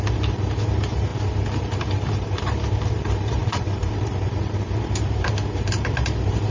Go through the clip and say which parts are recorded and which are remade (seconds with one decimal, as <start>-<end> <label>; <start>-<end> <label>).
0.0-1.1 remade; 1.1-1.6 recorded; 1.6-6.5 remade